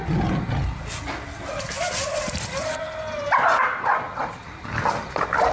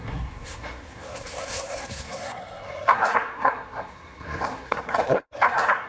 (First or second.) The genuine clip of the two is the first